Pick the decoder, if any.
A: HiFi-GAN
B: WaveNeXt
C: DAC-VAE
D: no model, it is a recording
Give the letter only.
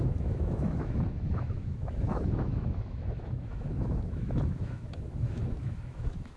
C